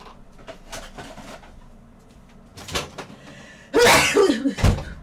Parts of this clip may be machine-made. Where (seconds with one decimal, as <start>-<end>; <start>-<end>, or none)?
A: 2.5-3.1